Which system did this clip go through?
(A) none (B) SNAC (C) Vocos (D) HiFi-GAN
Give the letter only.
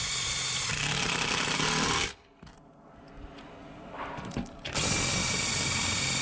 A